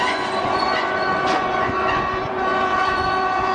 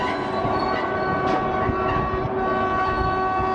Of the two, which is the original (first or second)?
second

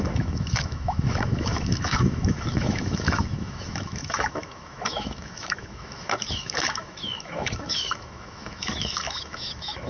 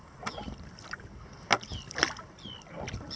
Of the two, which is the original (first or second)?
second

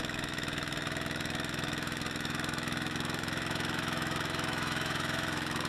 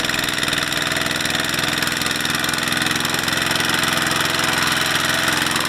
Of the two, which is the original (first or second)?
second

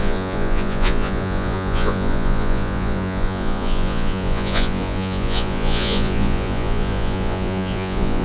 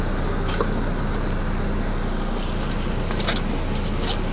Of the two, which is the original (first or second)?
second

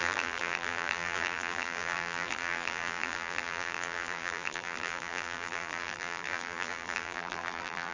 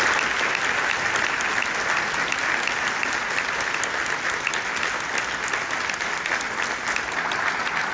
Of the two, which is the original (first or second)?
second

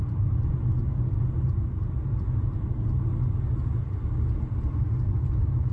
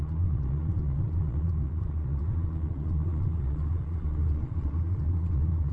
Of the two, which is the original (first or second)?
first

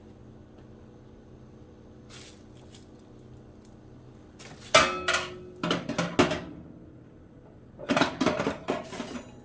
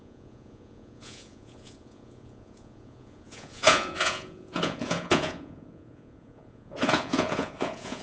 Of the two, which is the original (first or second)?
first